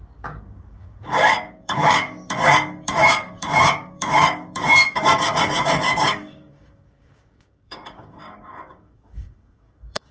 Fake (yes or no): yes